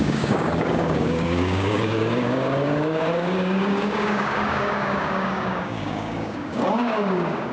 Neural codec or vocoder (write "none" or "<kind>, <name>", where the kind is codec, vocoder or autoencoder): codec, DAC